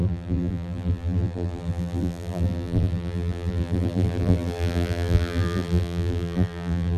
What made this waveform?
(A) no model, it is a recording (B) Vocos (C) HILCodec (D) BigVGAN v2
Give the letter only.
D